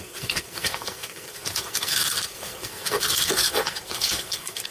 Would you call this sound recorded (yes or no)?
no